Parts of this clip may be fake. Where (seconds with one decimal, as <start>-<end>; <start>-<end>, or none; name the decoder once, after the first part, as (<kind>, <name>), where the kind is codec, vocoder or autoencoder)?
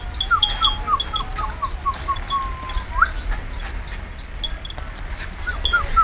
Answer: none